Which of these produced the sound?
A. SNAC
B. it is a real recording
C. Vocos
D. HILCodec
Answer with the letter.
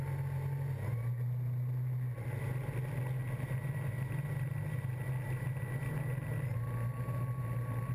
B